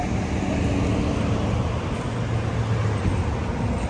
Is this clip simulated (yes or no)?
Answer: no